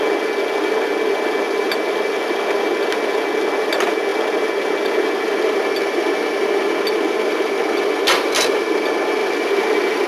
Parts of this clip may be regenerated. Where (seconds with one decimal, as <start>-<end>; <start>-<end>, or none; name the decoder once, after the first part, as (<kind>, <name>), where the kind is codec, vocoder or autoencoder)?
9.2-10.1 (vocoder, BigVGAN v2)